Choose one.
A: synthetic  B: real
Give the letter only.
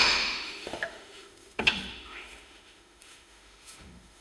A